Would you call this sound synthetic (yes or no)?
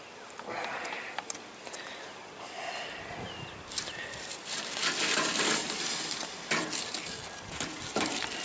no